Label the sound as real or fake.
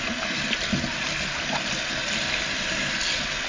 real